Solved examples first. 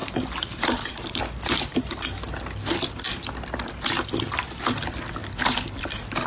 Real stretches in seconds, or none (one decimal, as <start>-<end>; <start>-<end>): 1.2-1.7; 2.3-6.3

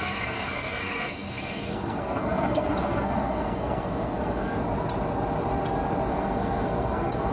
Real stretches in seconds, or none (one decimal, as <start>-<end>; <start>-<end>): 4.6-6.1

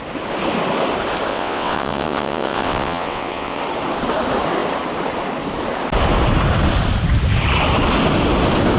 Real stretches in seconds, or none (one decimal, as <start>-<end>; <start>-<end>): 0.0-1.3; 3.6-8.8

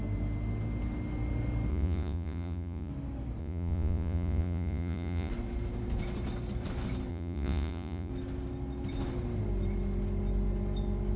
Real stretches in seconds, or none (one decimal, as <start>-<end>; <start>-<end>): 0.0-1.7; 2.9-3.4; 5.3-7.1; 8.1-11.2

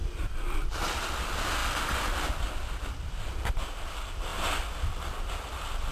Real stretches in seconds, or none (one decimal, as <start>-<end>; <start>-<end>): 0.8-5.9

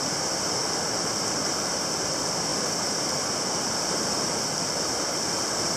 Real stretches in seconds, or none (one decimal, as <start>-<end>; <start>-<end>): 0.6-1.4

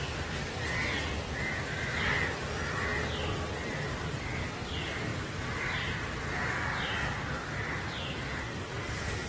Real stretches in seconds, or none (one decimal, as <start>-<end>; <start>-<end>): 0.0-5.1; 7.1-9.3

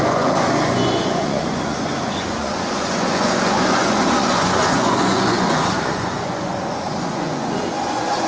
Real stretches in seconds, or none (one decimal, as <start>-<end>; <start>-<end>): none